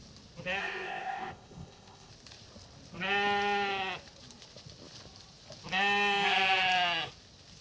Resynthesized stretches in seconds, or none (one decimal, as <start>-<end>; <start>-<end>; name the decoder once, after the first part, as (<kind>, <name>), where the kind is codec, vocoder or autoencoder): 0.6-2.1 (codec, ZipCodec)